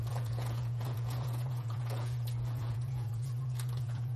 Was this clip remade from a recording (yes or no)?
yes